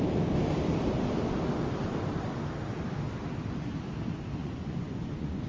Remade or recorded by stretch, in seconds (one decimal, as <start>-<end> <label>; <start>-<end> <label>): 0.0-4.4 recorded; 4.4-5.5 remade